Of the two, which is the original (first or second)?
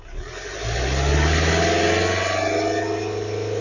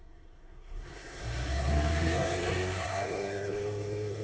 first